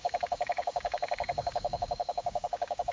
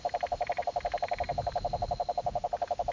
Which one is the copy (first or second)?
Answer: first